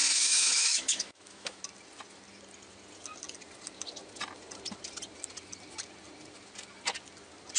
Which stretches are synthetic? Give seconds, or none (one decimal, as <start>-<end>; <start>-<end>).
0.0-1.6